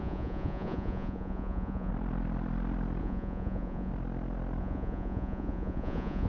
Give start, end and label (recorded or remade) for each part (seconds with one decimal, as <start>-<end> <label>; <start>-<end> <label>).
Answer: 0.0-1.9 remade; 1.9-3.0 recorded; 3.0-3.9 remade; 3.9-4.6 recorded; 4.6-6.3 remade